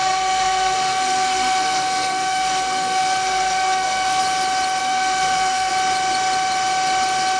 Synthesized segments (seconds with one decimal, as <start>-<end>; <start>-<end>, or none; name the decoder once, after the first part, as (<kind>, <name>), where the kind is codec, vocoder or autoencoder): 0.0-4.2 (codec, SNAC); 4.8-5.7